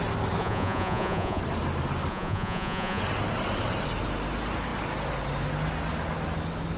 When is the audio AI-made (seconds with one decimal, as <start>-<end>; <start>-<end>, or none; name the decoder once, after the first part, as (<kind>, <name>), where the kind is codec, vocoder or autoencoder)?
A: 0.4-1.4 (vocoder, Vocos); 2.1-3.0